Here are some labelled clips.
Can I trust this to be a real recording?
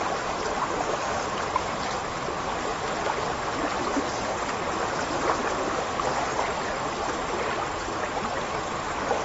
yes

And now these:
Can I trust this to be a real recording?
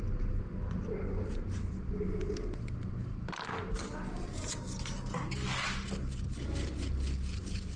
yes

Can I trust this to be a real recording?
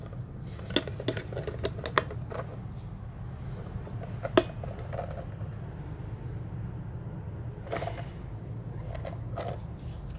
yes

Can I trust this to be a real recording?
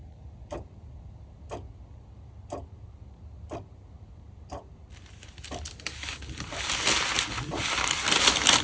yes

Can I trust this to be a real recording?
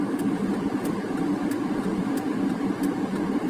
yes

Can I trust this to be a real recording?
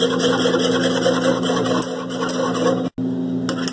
yes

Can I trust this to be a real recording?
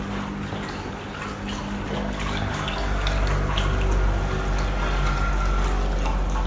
yes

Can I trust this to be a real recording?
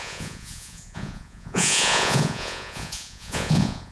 no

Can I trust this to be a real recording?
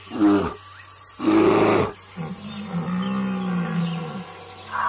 yes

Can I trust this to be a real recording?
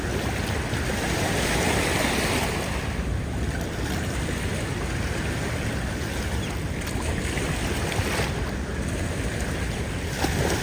yes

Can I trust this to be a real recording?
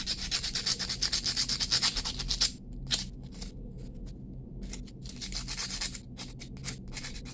yes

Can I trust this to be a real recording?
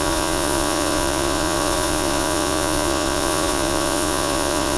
no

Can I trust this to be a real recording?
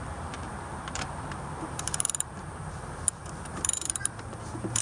no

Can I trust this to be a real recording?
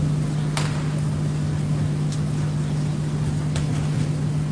yes